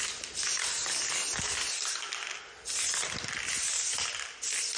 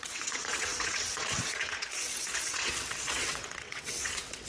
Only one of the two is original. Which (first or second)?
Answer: first